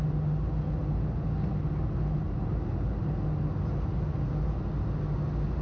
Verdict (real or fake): real